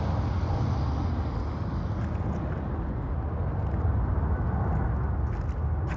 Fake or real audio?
real